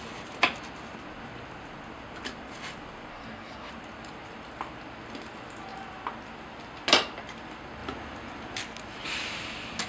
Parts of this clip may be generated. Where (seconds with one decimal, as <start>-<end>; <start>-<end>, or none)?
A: 3.1-3.7